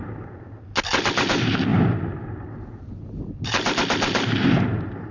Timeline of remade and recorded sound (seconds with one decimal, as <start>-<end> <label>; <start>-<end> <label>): 0.0-5.1 recorded